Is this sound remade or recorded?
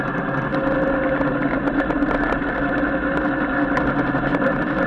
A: recorded